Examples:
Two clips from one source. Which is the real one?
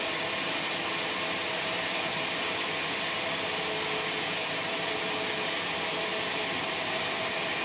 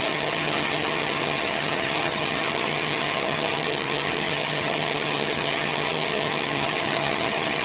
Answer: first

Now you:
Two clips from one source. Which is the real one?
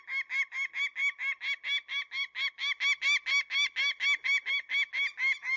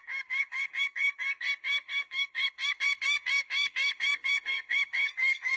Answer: first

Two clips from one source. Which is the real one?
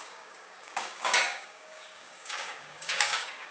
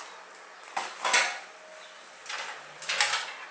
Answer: second